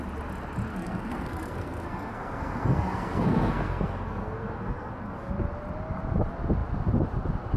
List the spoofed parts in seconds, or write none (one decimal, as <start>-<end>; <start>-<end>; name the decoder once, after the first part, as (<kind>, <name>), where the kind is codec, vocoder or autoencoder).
0.7-5.3 (codec, SNAC)